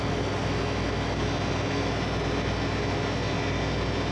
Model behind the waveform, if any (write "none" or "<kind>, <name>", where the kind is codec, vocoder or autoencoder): none